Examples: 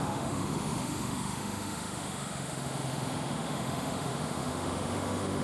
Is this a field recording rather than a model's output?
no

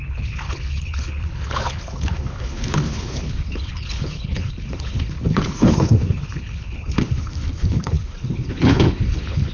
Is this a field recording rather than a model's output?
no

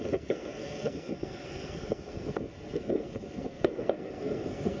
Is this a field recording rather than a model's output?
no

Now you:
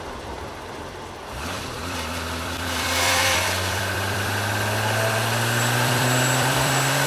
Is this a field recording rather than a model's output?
no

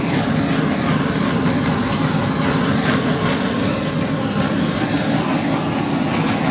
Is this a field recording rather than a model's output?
yes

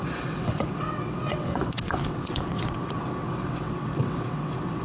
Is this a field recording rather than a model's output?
no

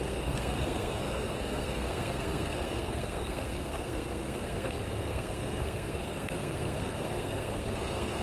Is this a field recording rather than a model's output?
no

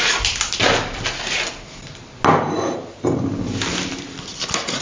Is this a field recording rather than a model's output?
yes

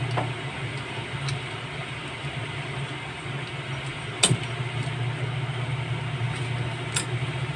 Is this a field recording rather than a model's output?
yes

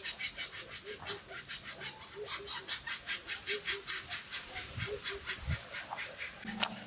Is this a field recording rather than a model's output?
yes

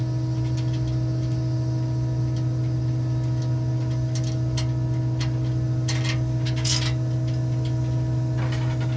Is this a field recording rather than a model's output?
yes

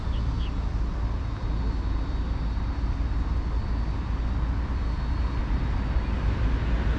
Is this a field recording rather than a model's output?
yes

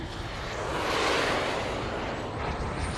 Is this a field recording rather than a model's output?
yes